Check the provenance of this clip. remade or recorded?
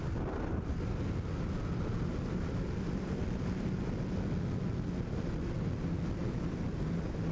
recorded